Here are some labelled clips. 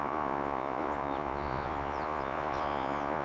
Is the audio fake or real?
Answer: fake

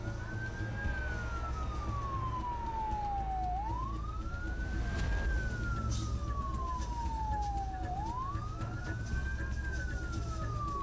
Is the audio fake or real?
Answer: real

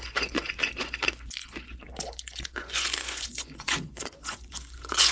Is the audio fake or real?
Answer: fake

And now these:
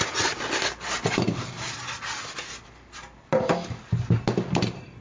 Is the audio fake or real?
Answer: real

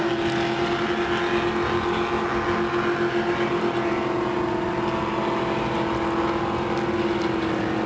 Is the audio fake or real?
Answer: real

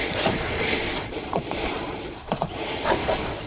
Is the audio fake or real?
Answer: fake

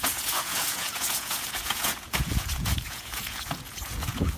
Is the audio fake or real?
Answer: fake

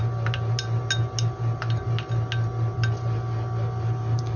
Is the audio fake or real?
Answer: real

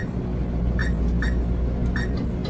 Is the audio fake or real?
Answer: real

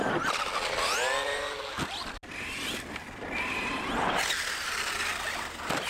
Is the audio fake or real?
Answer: real